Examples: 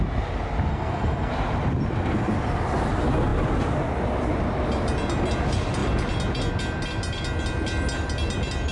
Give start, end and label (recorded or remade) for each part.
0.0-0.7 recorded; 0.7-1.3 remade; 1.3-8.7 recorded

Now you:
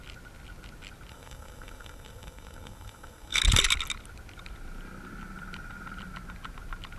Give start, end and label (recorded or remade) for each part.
0.0-1.1 recorded; 1.1-3.4 remade; 3.4-7.0 recorded